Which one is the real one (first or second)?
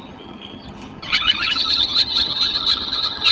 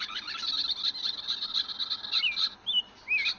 second